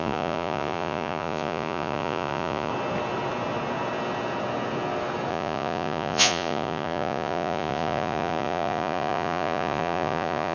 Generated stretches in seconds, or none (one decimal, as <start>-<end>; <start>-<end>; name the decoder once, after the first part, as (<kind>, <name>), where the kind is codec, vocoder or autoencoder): 0.0-2.7 (vocoder, Vocos); 5.3-10.5